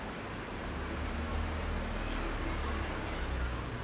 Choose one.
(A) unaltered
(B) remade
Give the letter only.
A